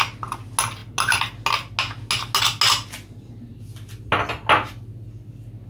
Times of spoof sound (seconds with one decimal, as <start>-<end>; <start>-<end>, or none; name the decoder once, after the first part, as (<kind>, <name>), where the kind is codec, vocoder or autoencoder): none